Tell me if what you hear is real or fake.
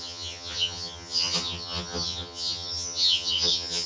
fake